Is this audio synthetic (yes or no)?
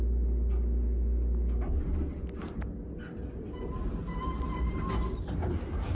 no